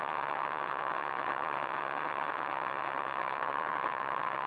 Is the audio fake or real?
fake